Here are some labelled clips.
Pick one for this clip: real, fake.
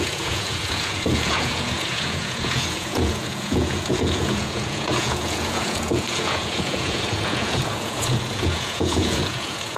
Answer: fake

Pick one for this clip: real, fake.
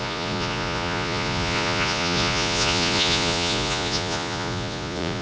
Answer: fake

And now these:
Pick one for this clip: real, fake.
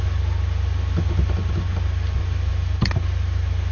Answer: real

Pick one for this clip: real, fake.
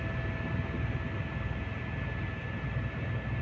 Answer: real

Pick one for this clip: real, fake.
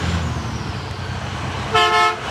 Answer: real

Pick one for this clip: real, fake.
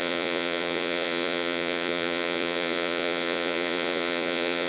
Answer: fake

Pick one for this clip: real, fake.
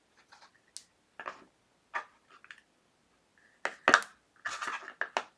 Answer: real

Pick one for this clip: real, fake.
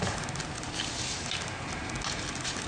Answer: real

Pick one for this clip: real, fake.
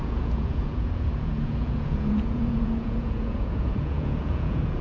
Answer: fake